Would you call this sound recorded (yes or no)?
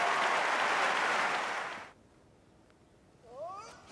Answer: yes